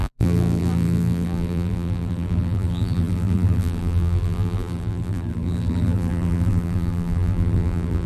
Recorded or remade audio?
remade